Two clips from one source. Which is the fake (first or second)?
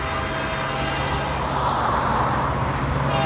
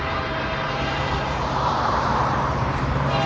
second